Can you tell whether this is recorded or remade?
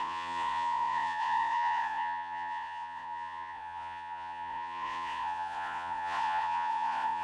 remade